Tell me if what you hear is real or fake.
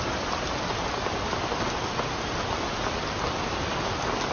real